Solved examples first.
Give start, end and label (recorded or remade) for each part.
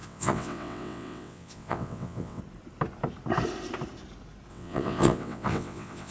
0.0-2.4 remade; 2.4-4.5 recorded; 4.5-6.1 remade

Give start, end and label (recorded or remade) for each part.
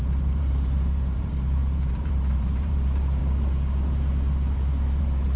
0.0-3.2 remade; 3.2-5.0 recorded; 5.0-5.4 remade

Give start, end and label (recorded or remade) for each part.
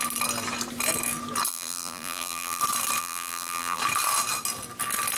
0.0-1.5 recorded; 1.5-2.6 remade; 2.6-3.0 recorded; 3.0-3.8 remade; 3.8-5.2 recorded